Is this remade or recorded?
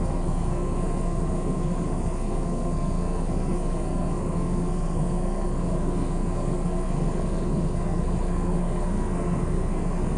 remade